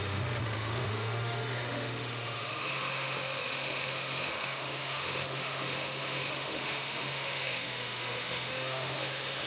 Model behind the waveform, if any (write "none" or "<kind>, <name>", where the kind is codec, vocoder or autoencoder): autoencoder, DAC-VAE